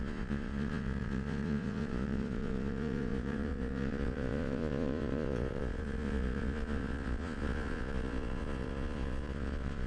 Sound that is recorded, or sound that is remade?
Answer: remade